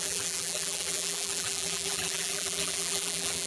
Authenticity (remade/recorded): remade